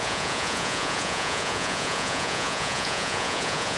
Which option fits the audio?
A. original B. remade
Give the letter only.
B